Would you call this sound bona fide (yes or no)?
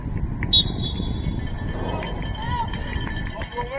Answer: yes